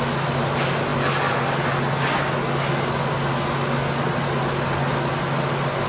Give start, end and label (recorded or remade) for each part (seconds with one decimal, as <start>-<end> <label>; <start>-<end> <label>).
0.0-5.9 recorded